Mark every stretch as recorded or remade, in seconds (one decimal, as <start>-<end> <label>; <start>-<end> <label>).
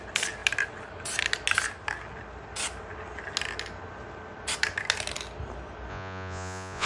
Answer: 0.0-5.9 recorded; 5.9-6.9 remade